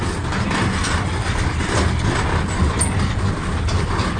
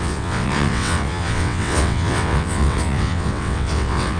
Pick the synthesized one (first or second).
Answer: second